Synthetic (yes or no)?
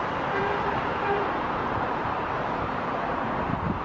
yes